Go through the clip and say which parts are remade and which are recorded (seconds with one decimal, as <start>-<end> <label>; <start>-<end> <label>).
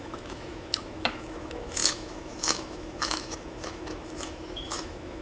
0.0-5.2 remade